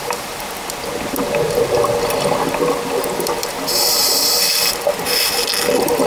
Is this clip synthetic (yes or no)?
no